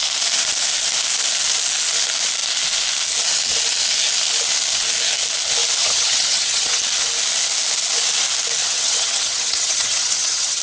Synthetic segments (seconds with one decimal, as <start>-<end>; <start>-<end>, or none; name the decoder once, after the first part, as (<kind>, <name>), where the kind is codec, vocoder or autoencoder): 5.8-6.8 (vocoder, HiFi-GAN); 8.6-10.6